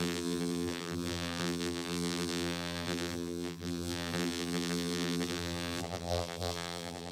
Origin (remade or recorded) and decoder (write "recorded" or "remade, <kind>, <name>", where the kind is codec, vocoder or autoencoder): remade, vocoder, BigVGAN v2